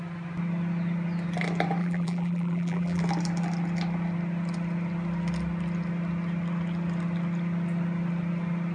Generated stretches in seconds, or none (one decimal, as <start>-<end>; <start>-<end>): 1.8-3.0